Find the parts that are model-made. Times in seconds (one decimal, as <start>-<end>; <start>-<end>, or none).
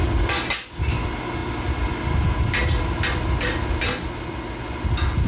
none